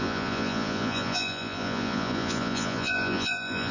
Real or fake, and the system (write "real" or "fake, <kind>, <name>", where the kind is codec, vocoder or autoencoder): fake, vocoder, Vocos